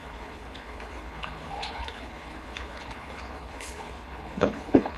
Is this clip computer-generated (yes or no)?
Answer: yes